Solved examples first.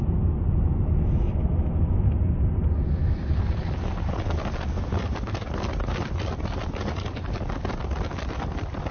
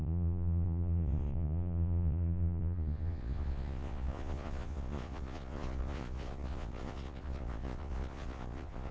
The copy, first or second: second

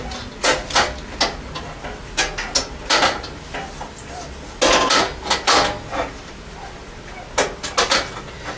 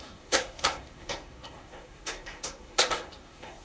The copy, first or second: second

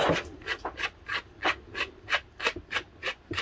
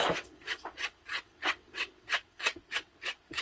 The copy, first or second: second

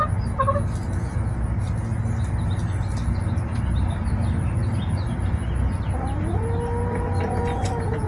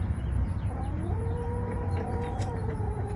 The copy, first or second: second